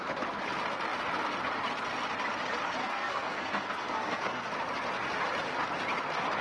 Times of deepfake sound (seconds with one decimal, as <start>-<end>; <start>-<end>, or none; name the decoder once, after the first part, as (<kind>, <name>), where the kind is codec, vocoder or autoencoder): 2.8-4.5 (codec, SNAC)